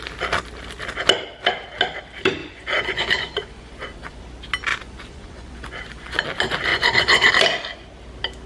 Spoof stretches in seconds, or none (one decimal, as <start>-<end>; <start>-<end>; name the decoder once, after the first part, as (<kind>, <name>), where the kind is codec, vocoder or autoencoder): 2.4-4.2 (vocoder, Vocos); 4.7-6.2; 6.7-7.3